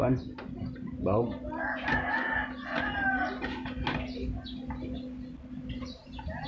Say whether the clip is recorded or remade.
recorded